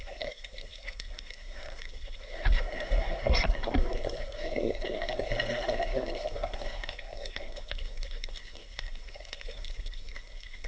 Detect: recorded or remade remade